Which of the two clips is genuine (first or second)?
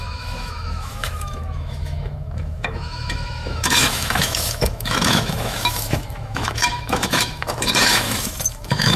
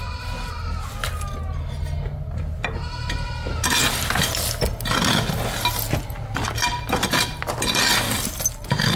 second